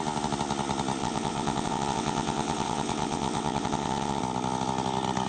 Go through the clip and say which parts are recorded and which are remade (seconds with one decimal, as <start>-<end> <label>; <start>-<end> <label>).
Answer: 0.0-1.0 recorded; 1.0-4.2 remade; 4.2-5.3 recorded